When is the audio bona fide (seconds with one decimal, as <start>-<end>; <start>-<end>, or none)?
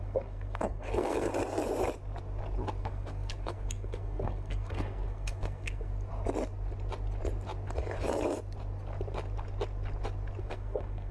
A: 1.3-2.8; 5.9-10.4